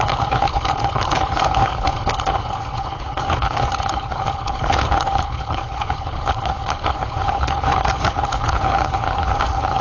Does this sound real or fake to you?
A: fake